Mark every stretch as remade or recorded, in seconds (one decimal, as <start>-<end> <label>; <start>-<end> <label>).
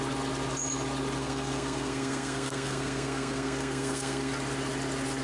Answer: 0.0-1.2 recorded; 1.2-4.3 remade; 4.3-5.2 recorded